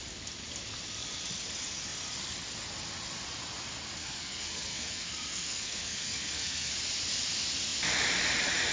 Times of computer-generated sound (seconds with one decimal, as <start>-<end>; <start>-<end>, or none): 4.0-6.7

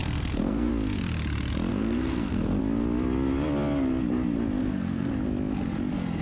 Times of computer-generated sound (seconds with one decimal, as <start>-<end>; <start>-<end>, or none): 0.0-0.7; 1.7-2.6; 4.6-5.1